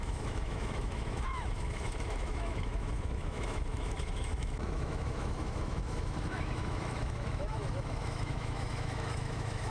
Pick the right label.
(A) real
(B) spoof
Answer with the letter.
B